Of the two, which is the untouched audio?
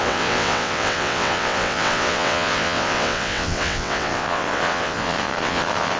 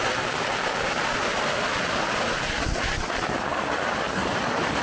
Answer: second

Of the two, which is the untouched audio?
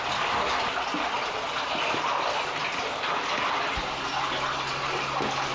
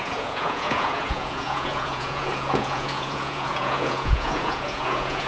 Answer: first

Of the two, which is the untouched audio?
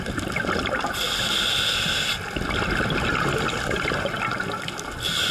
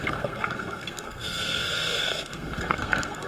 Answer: first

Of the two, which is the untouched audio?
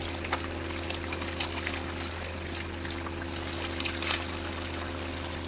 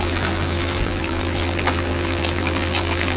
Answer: first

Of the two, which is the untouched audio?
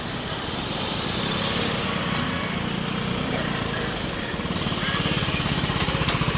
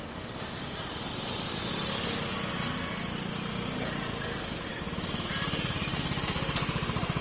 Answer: second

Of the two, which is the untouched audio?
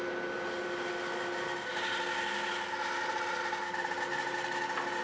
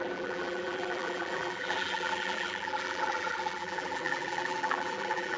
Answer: first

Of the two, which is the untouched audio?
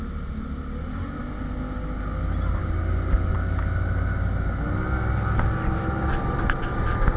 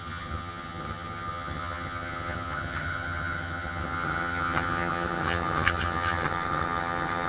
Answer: first